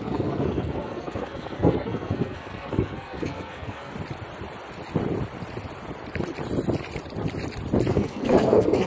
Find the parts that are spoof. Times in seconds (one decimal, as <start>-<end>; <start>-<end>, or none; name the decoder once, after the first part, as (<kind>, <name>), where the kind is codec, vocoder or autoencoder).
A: 0.0-3.9 (codec, SNAC); 7.9-8.9